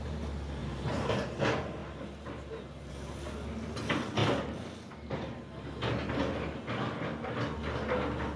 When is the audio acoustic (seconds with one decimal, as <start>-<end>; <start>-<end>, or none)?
0.0-0.6; 1.4-8.4